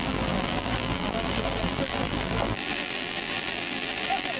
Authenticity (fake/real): fake